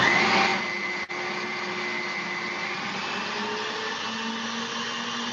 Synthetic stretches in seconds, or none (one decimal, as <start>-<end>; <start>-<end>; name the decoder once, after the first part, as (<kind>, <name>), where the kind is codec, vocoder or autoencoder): none